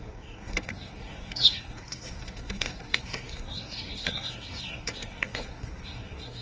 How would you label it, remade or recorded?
remade